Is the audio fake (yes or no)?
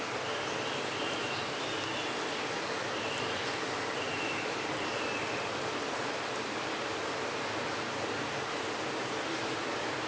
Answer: yes